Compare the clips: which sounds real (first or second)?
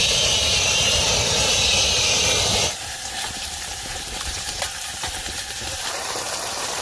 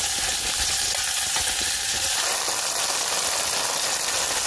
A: second